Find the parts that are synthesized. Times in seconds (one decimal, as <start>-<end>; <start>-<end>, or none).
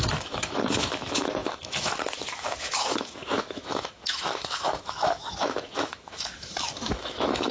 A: 0.0-7.5